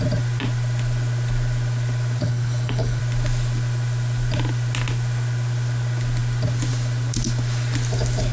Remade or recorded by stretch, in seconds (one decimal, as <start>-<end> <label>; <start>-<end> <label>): 0.0-2.2 recorded; 2.2-3.0 remade; 3.0-8.3 recorded